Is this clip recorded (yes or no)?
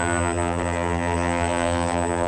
no